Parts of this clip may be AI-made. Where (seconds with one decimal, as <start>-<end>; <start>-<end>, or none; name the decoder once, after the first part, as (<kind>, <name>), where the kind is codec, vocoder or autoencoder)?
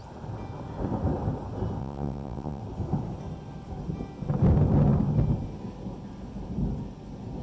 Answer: 1.8-2.6 (vocoder, WaveNeXt)